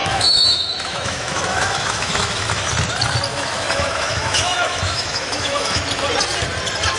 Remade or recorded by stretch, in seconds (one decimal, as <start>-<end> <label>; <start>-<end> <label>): 0.0-2.7 remade; 2.7-3.3 recorded; 3.3-5.8 remade; 5.8-7.0 recorded